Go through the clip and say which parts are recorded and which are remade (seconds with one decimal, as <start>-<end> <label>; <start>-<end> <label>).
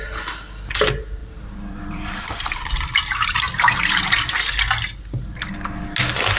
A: 0.0-1.2 recorded; 1.2-4.2 remade; 4.2-6.4 recorded